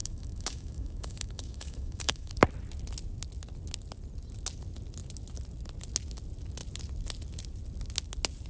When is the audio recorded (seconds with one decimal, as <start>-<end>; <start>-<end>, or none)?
2.3-8.5